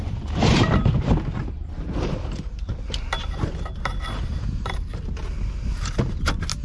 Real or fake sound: real